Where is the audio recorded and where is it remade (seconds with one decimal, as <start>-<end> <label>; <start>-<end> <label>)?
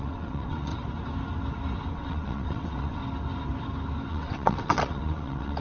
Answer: 0.0-0.7 remade; 0.7-1.9 recorded; 1.9-3.0 remade; 3.0-4.1 recorded; 4.1-5.6 remade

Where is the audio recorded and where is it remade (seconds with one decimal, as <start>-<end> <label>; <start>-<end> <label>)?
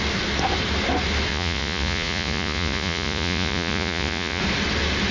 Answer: 0.0-1.3 recorded; 1.3-4.4 remade; 4.4-5.1 recorded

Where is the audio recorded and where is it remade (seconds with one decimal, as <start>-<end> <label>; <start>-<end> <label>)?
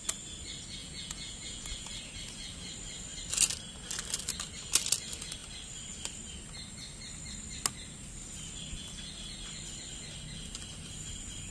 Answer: 0.0-0.8 recorded; 0.8-1.9 remade; 1.9-11.5 recorded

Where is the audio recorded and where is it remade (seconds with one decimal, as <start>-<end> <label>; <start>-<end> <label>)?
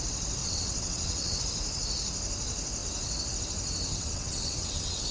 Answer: 0.0-0.4 recorded; 0.4-1.4 remade; 1.4-3.9 recorded; 3.9-5.1 remade